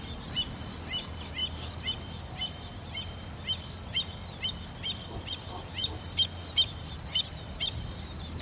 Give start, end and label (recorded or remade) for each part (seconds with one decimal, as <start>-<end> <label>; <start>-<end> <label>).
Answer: 0.0-8.4 recorded